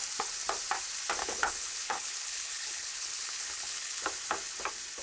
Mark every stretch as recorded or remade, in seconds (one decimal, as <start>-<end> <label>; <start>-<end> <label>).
0.0-1.2 recorded; 1.2-4.0 remade; 4.0-5.0 recorded